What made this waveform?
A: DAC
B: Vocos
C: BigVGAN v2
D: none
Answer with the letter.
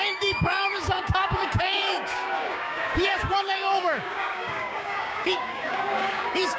A